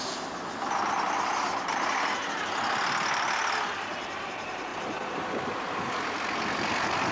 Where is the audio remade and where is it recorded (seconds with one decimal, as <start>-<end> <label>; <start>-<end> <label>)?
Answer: 0.0-7.1 recorded